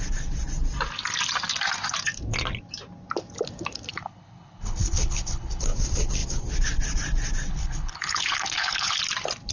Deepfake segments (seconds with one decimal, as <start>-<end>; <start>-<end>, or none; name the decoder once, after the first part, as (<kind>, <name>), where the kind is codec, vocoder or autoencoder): 3.9-5.6 (codec, HILCodec); 7.5-9.0